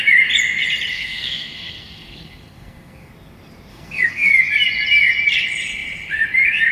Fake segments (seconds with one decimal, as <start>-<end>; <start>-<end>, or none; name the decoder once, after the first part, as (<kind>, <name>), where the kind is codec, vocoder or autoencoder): 0.9-3.1 (codec, SNAC); 3.7-4.3